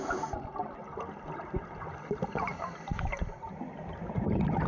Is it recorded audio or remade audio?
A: remade